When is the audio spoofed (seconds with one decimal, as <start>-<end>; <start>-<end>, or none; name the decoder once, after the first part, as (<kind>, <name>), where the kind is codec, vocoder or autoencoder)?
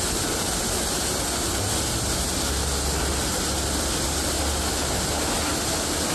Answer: none